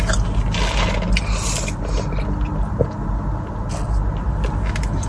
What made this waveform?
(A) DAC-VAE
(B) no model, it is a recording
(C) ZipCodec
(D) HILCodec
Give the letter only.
B